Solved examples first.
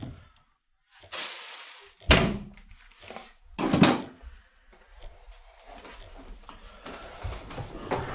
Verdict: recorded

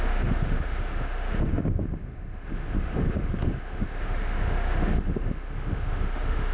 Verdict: remade